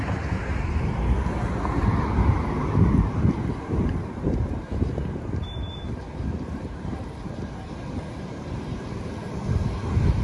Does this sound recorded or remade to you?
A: remade